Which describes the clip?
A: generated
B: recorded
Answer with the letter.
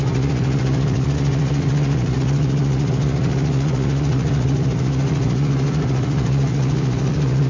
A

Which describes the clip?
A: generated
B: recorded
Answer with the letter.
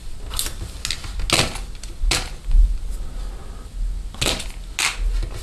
B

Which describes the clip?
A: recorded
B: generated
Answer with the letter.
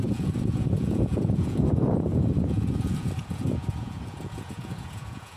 B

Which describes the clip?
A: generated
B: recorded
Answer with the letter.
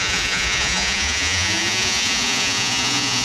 A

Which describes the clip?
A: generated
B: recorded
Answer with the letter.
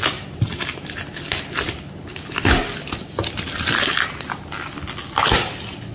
B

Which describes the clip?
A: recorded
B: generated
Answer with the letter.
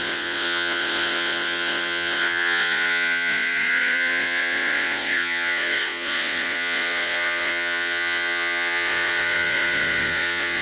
B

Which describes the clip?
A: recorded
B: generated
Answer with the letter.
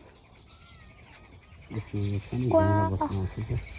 A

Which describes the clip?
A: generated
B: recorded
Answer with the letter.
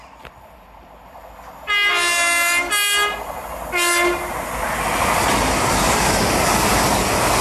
B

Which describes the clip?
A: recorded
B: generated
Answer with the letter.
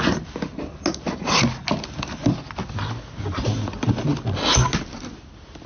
A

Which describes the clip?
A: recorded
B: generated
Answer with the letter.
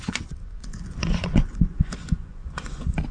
B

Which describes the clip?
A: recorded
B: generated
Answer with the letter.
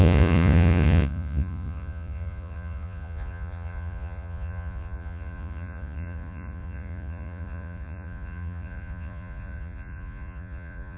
B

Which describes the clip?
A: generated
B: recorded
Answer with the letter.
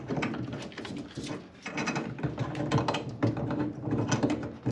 B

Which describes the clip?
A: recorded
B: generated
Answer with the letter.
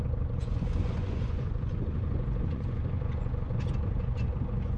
B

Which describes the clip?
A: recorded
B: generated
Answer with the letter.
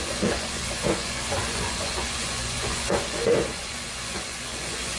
B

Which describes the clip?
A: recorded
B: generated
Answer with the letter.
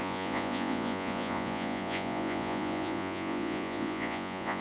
B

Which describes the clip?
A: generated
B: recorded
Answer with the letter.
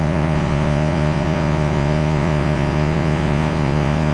A